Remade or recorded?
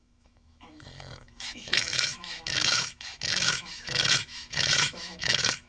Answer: remade